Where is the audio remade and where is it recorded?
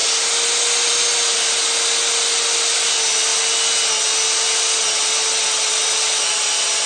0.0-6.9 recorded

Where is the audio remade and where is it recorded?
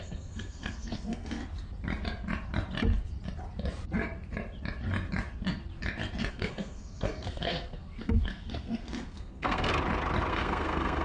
0.0-1.4 remade; 1.4-6.3 recorded; 6.3-9.7 remade; 9.7-10.3 recorded; 10.3-11.0 remade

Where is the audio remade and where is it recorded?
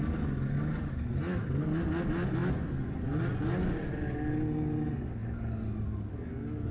0.0-6.7 recorded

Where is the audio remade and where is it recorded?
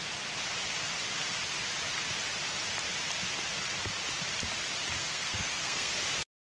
0.0-5.0 recorded; 5.0-5.9 remade; 5.9-6.5 recorded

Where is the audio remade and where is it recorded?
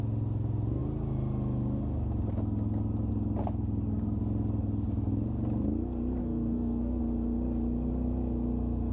0.0-6.2 recorded; 6.2-7.0 remade; 7.0-8.9 recorded